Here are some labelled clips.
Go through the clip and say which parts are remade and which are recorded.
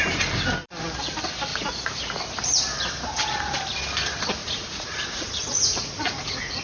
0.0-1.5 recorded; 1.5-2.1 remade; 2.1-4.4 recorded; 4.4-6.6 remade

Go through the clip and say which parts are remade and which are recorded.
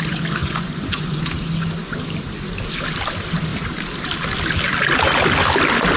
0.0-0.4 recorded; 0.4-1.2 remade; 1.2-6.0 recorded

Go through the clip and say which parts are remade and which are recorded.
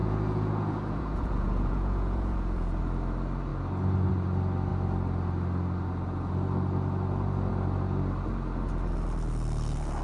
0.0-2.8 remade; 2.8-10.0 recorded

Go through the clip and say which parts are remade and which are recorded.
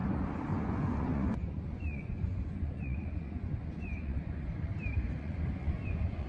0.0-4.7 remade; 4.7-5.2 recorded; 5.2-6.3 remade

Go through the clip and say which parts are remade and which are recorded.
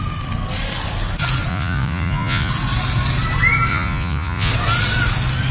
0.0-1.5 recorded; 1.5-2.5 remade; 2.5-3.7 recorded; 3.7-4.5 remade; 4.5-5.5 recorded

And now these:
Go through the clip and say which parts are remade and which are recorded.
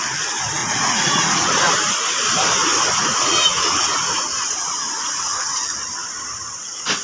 0.0-0.6 recorded; 0.6-1.7 remade; 1.7-2.6 recorded; 2.6-5.6 remade; 5.6-7.0 recorded